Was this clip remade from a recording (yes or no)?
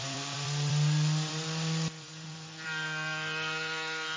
yes